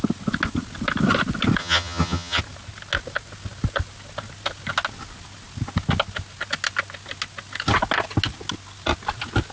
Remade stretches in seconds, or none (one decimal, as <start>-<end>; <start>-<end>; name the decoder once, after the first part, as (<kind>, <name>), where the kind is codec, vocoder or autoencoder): 1.6-2.4 (vocoder, HiFi-GAN)